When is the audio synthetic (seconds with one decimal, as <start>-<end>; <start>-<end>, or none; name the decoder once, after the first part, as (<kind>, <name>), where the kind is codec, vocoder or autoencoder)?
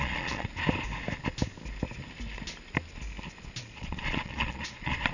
0.0-0.5 (vocoder, Vocos); 3.6-5.1